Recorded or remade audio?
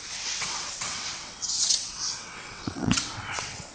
remade